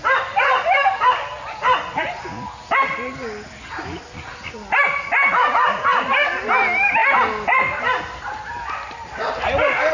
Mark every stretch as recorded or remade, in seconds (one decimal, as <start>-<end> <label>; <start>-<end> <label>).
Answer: 0.0-9.9 recorded

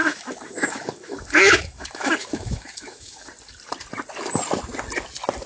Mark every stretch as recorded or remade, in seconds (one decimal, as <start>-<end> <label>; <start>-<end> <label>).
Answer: 0.0-3.3 remade; 3.3-5.5 recorded